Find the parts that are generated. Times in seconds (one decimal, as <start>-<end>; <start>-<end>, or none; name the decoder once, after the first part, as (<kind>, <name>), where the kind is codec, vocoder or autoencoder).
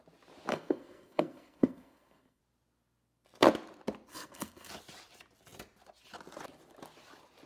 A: 0.5-2.4 (codec, SNAC); 4.1-4.7